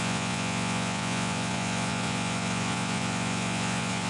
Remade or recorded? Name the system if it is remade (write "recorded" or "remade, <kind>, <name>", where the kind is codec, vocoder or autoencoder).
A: remade, vocoder, Vocos